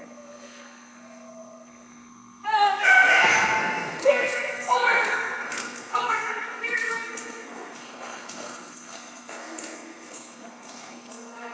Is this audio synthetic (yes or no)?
yes